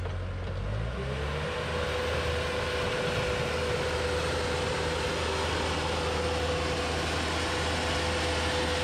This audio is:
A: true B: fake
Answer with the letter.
A